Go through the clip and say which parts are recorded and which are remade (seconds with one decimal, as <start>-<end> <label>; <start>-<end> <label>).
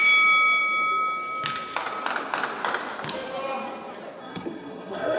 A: 0.0-4.2 recorded; 4.2-5.2 remade